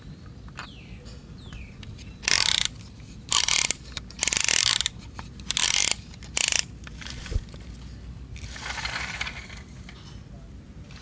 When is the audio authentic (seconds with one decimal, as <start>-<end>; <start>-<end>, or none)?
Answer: 0.0-11.0